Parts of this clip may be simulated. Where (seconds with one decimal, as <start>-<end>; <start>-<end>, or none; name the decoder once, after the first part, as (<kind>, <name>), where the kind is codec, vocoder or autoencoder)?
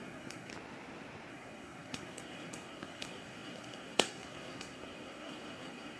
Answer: 0.0-0.5 (codec, SNAC); 1.3-6.0